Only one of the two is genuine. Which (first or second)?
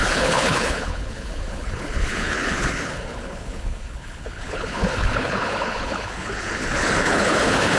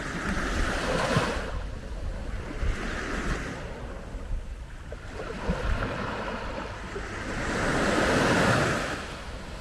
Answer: second